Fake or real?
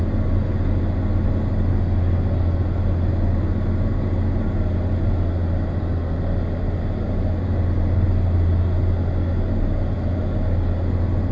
real